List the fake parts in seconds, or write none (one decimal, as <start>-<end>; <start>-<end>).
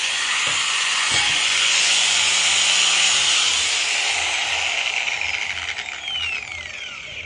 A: 0.0-2.3; 6.7-7.3